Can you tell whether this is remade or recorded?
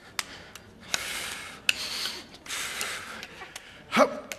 recorded